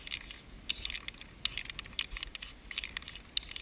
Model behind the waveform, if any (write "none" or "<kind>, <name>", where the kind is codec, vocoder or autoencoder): none